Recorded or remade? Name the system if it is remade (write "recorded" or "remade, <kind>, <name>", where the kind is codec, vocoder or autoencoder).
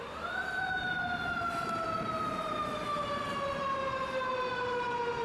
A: recorded